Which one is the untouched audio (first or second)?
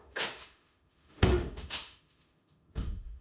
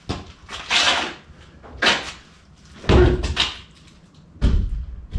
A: second